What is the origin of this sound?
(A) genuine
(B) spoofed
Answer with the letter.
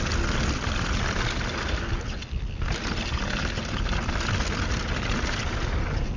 A